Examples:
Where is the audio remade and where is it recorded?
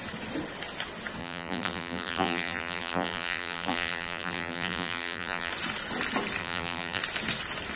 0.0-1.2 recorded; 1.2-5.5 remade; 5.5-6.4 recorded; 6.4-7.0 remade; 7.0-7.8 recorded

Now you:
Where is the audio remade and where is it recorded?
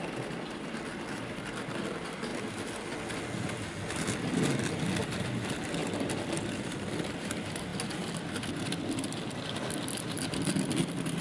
0.0-2.3 remade; 2.3-4.7 recorded; 4.7-7.7 remade; 7.7-8.5 recorded; 8.5-11.2 remade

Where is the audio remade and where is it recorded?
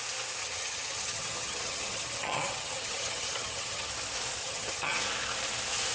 0.0-0.4 recorded; 0.4-3.9 remade; 3.9-4.4 recorded; 4.4-5.0 remade; 5.0-5.9 recorded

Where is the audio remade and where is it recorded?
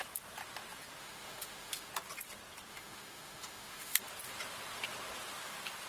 0.0-1.0 recorded; 1.0-1.9 remade; 1.9-2.7 recorded; 2.7-4.0 remade; 4.0-5.9 recorded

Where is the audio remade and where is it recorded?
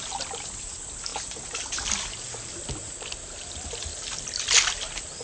0.0-5.2 recorded